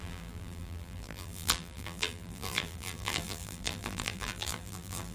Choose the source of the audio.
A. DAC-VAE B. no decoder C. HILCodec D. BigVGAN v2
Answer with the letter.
D